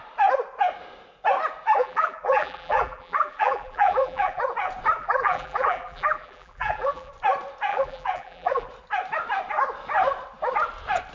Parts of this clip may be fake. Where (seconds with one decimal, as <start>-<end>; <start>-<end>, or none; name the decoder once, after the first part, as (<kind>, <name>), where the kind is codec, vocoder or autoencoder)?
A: 1.8-4.4 (vocoder, BigVGAN v2); 5.0-7.1; 7.7-8.7